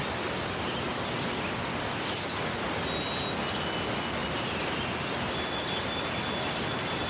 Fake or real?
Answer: real